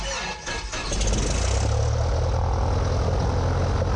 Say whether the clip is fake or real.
real